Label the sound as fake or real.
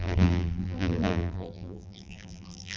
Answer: fake